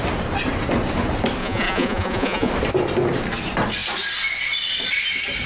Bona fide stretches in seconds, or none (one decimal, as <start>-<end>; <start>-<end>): 0.0-1.4; 2.5-5.5